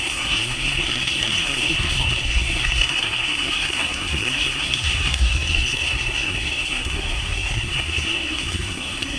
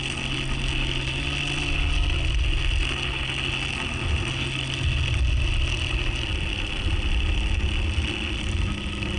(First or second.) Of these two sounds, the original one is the second